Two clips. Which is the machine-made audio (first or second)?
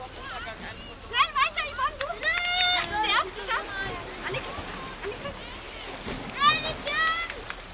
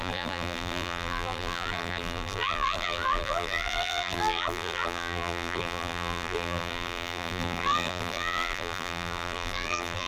second